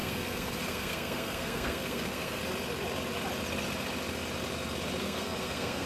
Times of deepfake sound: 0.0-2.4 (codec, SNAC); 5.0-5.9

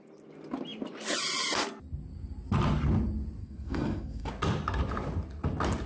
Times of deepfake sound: 3.4-4.3 (codec, SNAC)

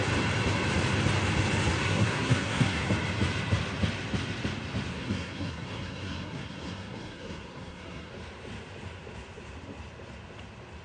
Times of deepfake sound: 1.8-2.9 (codec, SNAC); 4.9-8.1

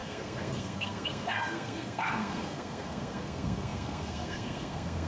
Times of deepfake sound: 0.0-5.1 (codec, SNAC)